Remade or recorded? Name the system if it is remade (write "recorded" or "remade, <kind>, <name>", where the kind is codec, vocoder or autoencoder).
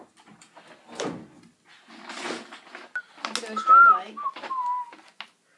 recorded